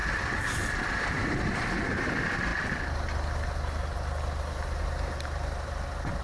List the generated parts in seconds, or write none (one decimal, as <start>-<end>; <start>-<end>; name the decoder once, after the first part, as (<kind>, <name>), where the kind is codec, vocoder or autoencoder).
none